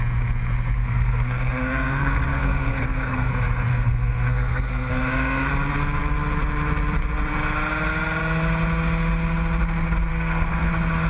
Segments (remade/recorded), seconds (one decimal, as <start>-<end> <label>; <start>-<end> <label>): 0.0-0.8 recorded; 0.8-3.3 remade; 3.3-3.7 recorded; 3.7-5.5 remade; 5.5-10.1 recorded; 10.1-10.7 remade; 10.7-11.1 recorded